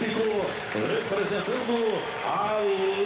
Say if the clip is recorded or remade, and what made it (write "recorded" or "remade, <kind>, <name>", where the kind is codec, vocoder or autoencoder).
remade, codec, DAC